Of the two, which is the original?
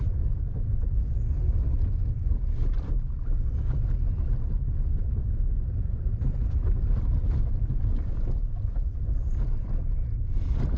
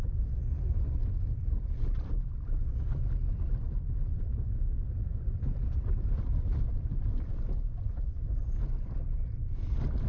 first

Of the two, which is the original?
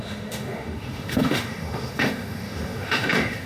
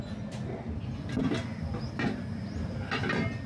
second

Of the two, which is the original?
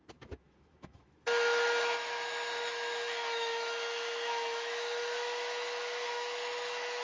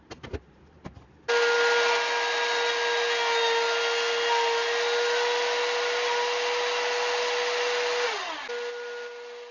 second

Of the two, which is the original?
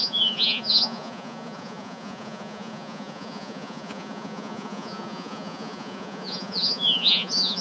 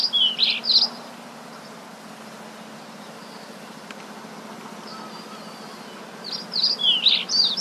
second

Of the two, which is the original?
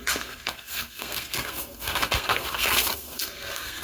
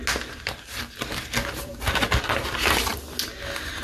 second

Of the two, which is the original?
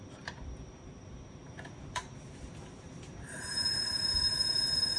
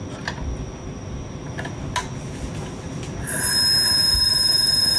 second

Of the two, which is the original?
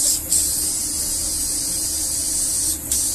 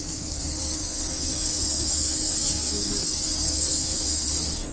first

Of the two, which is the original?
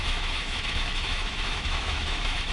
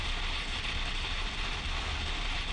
second